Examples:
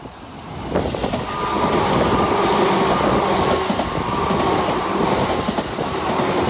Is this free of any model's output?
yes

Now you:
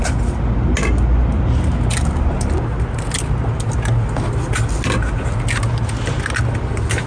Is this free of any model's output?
yes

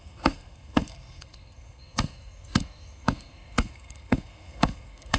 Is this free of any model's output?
no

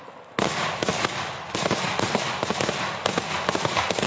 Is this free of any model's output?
yes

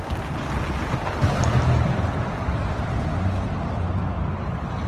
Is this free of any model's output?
yes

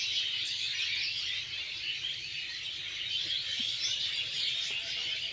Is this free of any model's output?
yes